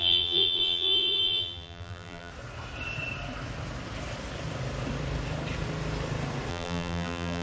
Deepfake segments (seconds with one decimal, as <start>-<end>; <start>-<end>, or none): 0.0-2.3; 6.5-7.4